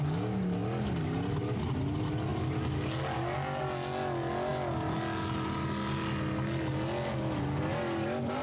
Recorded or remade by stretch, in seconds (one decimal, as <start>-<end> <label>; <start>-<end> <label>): 0.0-8.4 recorded